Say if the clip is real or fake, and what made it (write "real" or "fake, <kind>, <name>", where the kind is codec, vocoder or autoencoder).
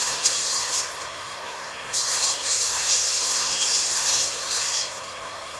fake, codec, SNAC